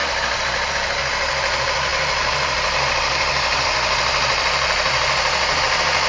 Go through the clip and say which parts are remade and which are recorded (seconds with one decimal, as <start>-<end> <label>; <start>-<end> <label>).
0.0-6.1 recorded